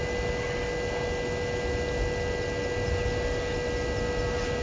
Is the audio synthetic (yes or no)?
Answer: no